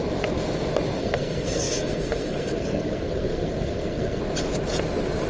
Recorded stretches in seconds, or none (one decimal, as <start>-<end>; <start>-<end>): 0.0-1.0; 4.2-5.3